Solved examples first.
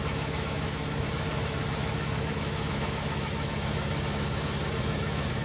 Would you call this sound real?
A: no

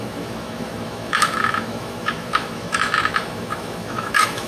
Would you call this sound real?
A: no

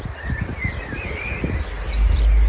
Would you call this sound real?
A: yes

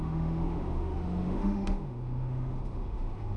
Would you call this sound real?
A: no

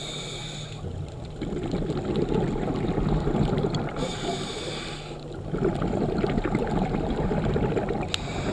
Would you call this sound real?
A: yes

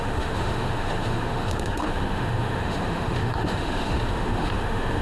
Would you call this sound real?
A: no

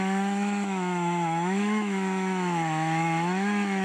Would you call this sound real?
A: no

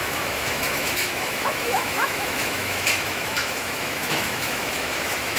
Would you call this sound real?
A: no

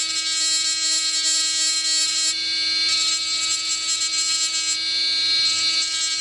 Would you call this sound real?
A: yes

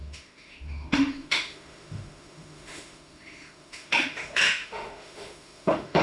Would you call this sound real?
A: no